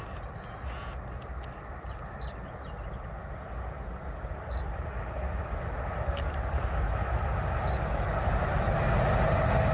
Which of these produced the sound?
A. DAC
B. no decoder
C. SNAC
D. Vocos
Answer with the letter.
B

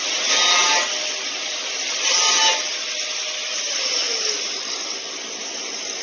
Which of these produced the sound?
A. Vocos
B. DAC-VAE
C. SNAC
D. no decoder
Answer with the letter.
D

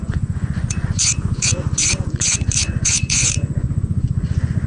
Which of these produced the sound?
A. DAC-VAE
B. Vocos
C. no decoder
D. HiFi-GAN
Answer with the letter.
B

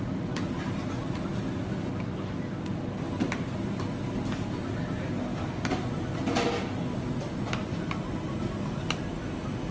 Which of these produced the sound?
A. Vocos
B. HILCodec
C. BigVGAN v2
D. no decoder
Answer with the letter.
D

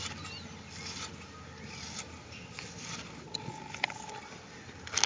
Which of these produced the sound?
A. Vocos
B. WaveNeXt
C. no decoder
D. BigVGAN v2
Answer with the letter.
C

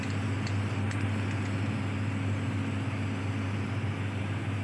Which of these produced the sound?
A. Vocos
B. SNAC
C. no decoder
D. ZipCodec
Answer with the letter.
C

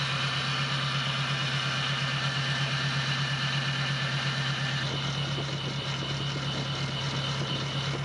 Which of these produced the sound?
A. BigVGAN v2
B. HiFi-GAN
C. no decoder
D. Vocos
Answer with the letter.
C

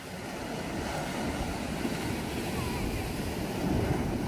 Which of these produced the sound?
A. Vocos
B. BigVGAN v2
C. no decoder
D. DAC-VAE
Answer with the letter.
C